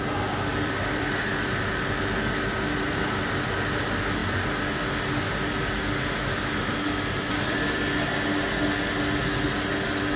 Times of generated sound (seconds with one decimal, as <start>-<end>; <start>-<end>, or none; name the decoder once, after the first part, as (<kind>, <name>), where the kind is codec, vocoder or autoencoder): 0.5-1.2 (vocoder, BigVGAN v2)